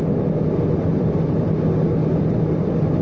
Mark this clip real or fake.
real